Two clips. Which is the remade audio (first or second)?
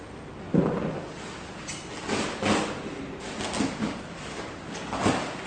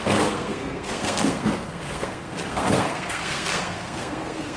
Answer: second